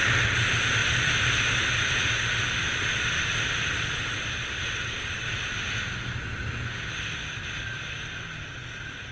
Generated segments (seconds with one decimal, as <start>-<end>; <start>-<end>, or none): none